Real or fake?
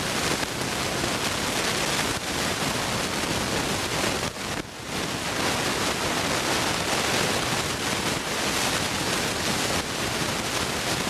real